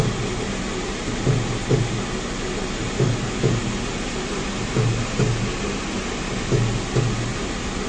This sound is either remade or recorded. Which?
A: recorded